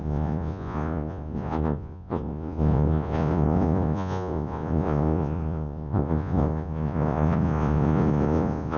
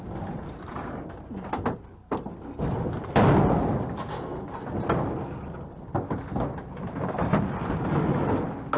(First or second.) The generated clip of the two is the first